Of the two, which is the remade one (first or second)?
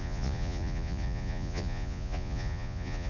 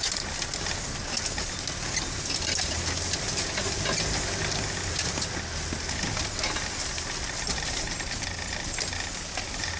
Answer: first